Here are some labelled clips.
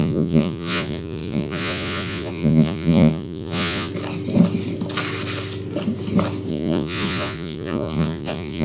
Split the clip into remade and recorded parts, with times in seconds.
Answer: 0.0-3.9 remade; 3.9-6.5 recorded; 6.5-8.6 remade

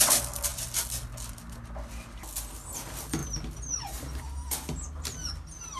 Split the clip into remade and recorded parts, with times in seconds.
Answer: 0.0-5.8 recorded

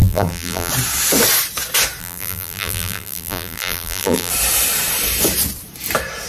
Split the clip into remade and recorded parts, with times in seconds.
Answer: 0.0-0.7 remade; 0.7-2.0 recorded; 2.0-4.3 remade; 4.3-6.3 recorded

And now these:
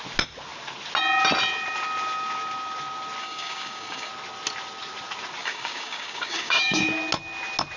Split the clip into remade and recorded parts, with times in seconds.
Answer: 0.0-3.2 recorded; 3.2-4.1 remade; 4.1-5.4 recorded; 5.4-6.8 remade; 6.8-7.8 recorded

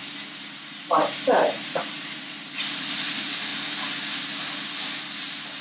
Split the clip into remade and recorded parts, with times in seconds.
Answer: 0.0-2.2 remade; 2.2-5.6 recorded

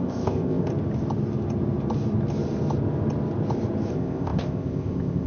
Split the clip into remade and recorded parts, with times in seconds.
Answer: 0.0-0.7 remade; 0.7-3.9 recorded; 3.9-5.3 remade

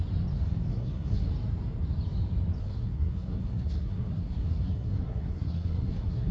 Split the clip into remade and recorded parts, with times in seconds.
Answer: 0.0-0.7 recorded; 0.7-1.3 remade; 1.3-2.6 recorded; 2.6-6.3 remade